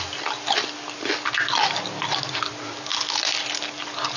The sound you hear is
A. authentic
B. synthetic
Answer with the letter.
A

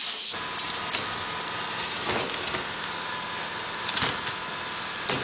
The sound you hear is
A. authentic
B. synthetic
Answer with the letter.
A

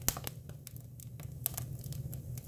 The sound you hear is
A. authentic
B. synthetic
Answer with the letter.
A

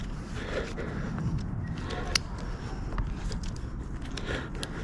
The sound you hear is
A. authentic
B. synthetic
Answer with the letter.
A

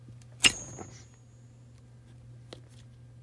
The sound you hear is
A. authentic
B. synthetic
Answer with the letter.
A